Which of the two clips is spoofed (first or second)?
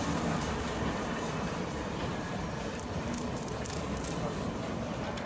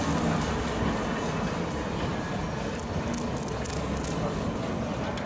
first